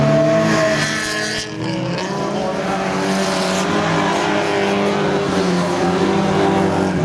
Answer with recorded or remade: recorded